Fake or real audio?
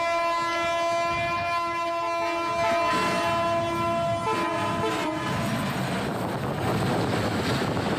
real